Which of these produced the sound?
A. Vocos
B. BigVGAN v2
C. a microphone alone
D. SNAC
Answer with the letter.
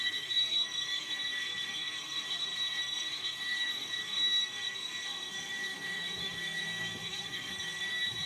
D